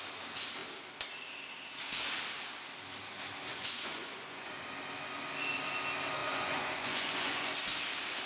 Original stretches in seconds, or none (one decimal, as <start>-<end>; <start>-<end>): 0.0-3.5; 4.5-6.2; 7.6-8.3